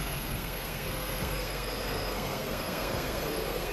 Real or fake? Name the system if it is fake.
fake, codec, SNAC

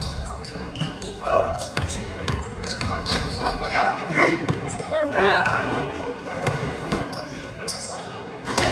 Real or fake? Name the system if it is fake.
fake, codec, SNAC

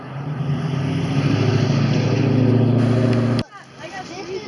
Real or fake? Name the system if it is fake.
real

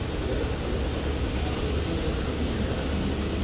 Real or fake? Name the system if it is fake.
real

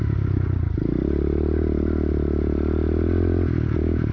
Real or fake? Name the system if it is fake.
real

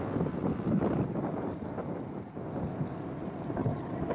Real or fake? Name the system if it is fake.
real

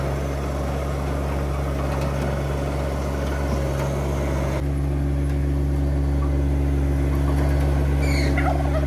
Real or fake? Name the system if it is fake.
real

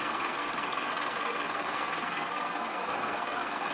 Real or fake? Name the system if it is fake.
fake, codec, SNAC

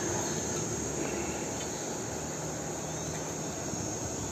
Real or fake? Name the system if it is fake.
real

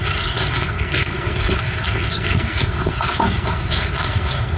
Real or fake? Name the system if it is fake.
fake, codec, SNAC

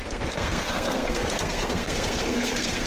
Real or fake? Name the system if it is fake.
fake, codec, SNAC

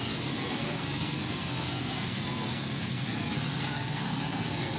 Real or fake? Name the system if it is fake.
fake, codec, SNAC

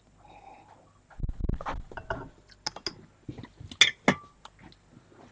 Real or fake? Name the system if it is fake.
real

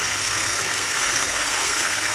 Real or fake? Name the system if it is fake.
fake, codec, SNAC